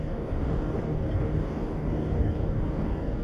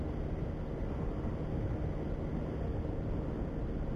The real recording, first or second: second